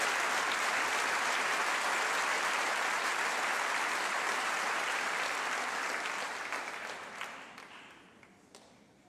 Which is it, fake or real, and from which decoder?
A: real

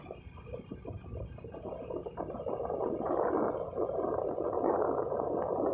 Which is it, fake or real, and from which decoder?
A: real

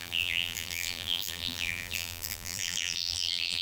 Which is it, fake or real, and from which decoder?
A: fake, vocoder, BigVGAN v2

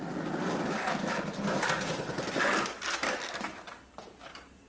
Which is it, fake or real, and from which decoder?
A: real